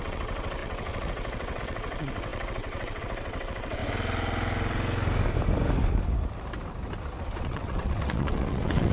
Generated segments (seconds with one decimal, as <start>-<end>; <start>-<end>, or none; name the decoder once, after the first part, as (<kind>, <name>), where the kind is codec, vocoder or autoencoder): 0.0-3.8 (vocoder, WaveNeXt); 7.3-8.9